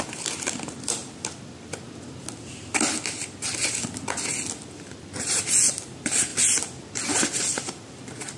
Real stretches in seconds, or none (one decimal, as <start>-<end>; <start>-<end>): 1.0-5.7; 6.3-6.9